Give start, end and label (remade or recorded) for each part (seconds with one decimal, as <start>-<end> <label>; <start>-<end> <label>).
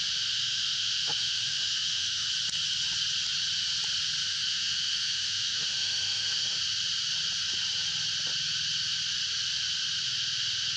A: 0.0-0.4 recorded; 0.4-2.3 remade; 2.3-4.2 recorded; 4.2-6.6 remade; 6.6-10.8 recorded